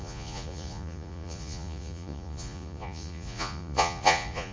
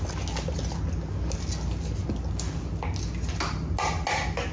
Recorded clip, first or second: second